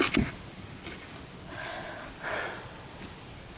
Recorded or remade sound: recorded